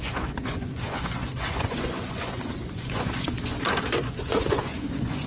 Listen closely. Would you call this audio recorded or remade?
remade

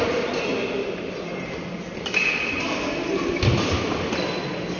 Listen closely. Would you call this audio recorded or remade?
recorded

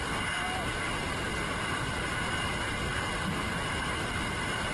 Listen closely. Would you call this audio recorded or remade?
recorded